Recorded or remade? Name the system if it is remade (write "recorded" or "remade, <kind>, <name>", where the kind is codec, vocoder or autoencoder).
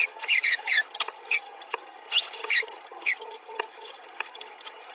remade, vocoder, HiFi-GAN